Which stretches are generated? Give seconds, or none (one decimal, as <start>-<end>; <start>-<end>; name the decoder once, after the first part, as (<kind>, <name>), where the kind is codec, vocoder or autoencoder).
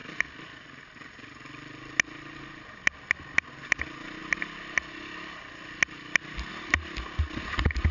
none